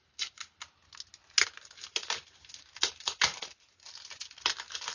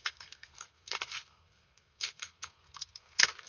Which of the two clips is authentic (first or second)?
first